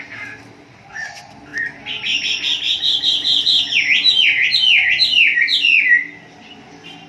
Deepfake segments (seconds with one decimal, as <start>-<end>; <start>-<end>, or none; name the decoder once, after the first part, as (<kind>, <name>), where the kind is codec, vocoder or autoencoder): none